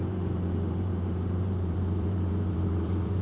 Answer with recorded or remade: remade